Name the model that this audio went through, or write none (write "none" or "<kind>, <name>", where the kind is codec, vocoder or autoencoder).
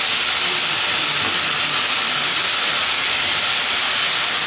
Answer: none